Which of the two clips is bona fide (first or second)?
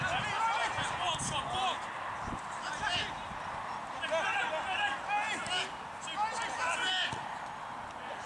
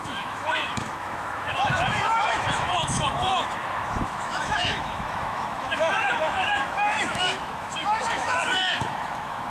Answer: first